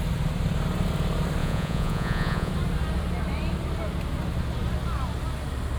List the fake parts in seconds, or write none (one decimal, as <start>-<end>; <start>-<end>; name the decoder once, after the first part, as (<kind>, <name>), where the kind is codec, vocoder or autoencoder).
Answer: 1.4-2.5 (vocoder, Vocos)